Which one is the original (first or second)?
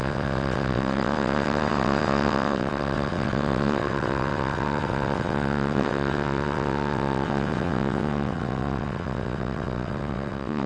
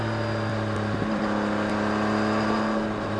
second